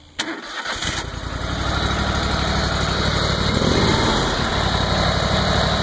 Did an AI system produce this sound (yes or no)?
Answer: no